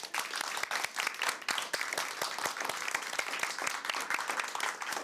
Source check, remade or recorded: recorded